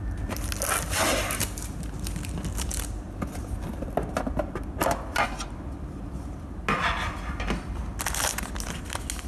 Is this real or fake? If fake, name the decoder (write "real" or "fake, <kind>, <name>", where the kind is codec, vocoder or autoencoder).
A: real